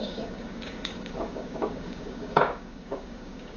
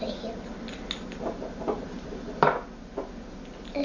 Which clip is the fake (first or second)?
first